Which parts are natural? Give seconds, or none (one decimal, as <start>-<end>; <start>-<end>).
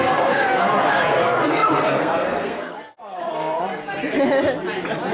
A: 3.6-5.1